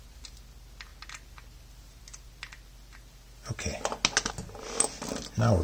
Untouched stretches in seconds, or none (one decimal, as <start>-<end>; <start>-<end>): 0.0-5.6

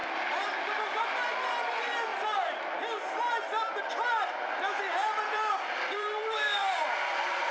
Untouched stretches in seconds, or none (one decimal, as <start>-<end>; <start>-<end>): 0.0-0.7; 2.1-5.3

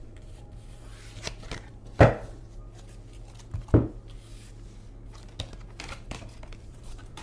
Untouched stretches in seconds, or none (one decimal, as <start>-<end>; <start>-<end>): 0.9-1.4; 1.8-5.8

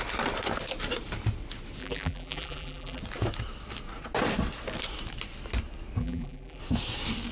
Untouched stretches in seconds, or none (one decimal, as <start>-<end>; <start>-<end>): 0.0-1.8; 3.0-6.0; 6.6-7.3

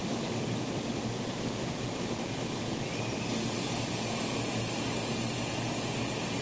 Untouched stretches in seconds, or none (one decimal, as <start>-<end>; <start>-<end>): 2.6-6.4

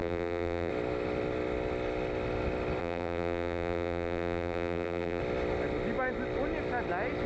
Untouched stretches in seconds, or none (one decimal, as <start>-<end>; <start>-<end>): 0.7-2.8; 5.2-7.3

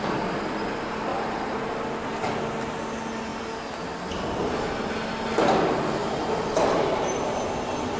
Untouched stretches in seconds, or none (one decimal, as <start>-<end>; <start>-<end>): 0.0-1.1; 1.7-6.0; 7.3-8.0

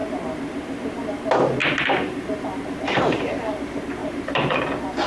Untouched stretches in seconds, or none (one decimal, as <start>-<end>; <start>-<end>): 1.1-1.6; 3.2-4.0; 4.6-5.1